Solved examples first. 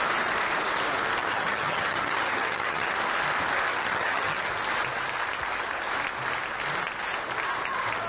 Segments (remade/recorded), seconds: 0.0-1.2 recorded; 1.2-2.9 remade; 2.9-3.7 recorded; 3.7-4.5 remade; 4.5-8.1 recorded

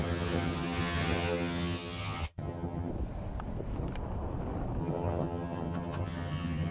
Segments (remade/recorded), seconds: 0.0-2.9 remade; 2.9-4.8 recorded; 4.8-6.7 remade

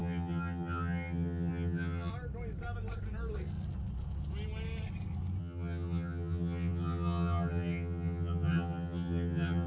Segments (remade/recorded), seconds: 0.0-2.1 remade; 2.1-5.4 recorded; 5.4-9.7 remade

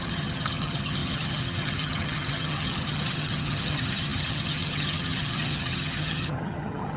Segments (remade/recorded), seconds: 0.0-7.0 remade

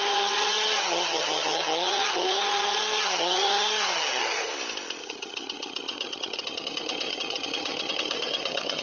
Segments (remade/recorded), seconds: 0.0-4.5 remade; 4.5-5.0 recorded; 5.0-8.8 remade

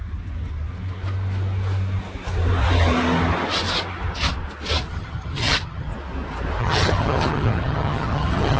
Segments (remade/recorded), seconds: 0.0-4.9 recorded; 4.9-5.9 remade; 5.9-6.6 recorded; 6.6-8.6 remade

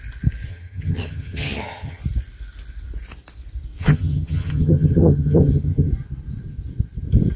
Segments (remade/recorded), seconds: 0.0-0.5 recorded; 0.5-2.0 remade; 2.0-3.8 recorded; 3.8-5.9 remade; 5.9-7.4 recorded

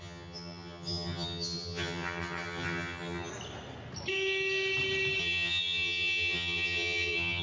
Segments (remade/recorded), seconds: 0.0-3.3 remade; 3.3-5.2 recorded; 5.2-7.4 remade